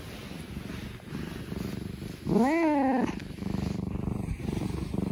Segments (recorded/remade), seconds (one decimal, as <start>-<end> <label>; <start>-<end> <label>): 0.0-3.2 recorded; 3.2-5.1 remade